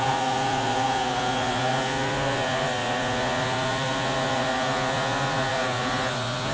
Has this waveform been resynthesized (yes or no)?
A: yes